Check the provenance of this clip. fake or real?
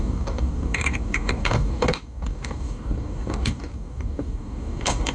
fake